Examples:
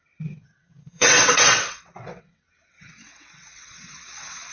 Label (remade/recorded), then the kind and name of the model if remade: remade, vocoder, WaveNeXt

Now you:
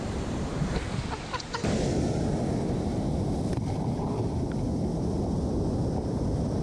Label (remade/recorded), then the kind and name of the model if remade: remade, vocoder, BigVGAN v2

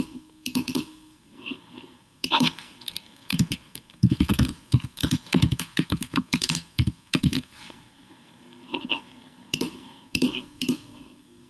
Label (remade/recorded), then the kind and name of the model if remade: remade, codec, SNAC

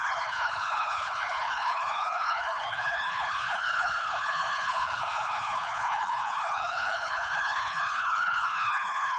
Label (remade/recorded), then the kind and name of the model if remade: remade, codec, HILCodec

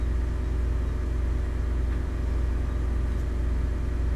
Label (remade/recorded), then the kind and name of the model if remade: recorded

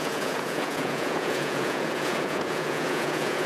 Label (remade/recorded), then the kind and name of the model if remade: remade, vocoder, Vocos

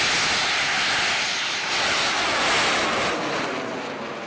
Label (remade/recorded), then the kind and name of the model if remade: recorded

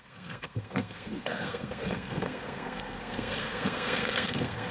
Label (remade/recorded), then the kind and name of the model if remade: remade, codec, SNAC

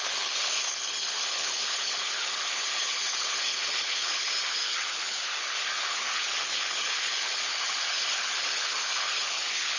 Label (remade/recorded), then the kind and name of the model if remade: remade, codec, HILCodec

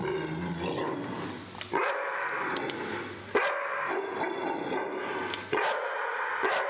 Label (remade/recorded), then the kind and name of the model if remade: recorded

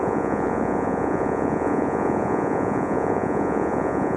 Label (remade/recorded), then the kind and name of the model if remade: remade, vocoder, Vocos